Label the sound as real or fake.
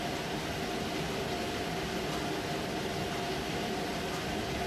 real